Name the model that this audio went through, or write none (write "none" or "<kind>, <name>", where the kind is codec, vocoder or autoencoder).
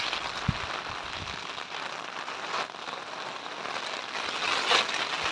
none